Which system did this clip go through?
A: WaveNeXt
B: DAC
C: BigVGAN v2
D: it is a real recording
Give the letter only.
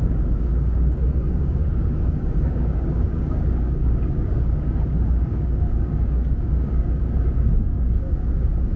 B